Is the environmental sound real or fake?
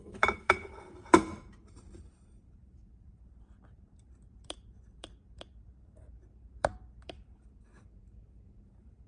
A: fake